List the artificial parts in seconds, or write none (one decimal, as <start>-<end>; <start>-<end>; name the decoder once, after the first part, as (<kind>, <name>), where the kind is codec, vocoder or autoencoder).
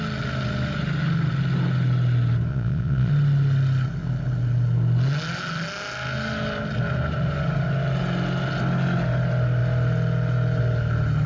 2.5-3.1 (vocoder, Vocos)